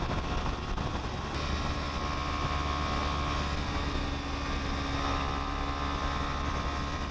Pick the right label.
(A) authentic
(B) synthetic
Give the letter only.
A